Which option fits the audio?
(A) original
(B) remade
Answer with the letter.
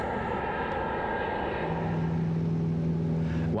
A